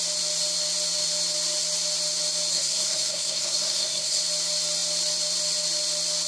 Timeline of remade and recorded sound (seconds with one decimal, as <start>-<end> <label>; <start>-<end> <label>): 0.0-2.5 recorded; 2.5-4.2 remade; 4.2-6.3 recorded